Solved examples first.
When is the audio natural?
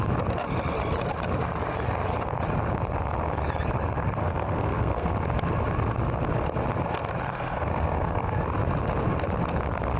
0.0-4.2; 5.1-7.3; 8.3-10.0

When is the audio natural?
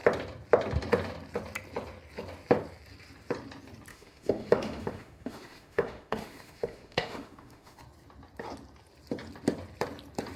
0.0-3.9; 7.8-10.4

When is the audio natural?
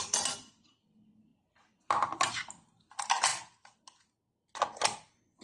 0.0-5.4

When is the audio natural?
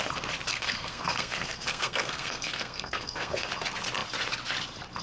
0.0-0.5; 3.5-5.0